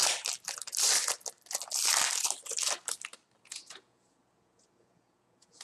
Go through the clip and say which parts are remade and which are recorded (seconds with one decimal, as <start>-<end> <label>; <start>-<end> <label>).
0.0-3.4 recorded; 3.4-5.6 remade